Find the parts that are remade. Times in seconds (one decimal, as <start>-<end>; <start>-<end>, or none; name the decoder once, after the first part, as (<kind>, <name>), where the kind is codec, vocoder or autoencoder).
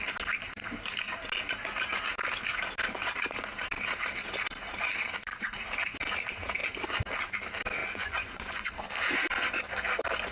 7.8-8.7 (vocoder, Vocos)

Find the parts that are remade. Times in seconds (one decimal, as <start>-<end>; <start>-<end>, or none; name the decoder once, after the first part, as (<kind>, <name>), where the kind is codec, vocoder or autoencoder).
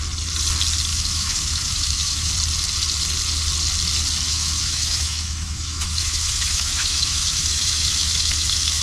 0.9-2.3 (autoencoder, DAC-VAE); 4.3-8.8